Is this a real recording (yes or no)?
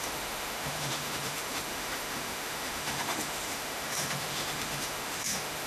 no